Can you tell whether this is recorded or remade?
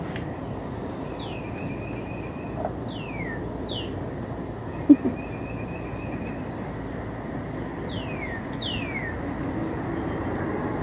recorded